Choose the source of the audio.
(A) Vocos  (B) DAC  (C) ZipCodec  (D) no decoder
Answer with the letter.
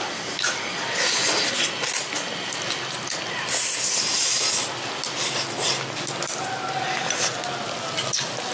D